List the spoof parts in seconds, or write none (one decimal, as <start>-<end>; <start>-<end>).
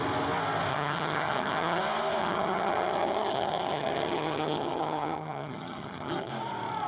0.7-1.8; 2.2-6.3